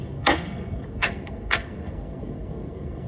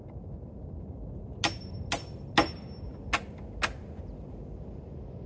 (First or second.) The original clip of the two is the second